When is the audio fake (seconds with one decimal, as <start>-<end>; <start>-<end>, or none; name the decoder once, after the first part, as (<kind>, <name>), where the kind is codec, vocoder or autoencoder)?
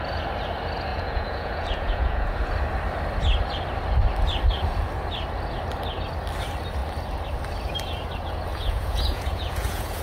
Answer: 0.9-2.5 (vocoder, Vocos); 8.5-10.0